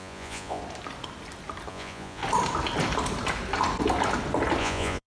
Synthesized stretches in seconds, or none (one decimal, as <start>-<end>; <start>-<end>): 0.0-0.6; 1.7-2.2; 4.6-5.1